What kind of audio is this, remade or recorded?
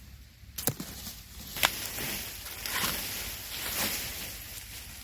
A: recorded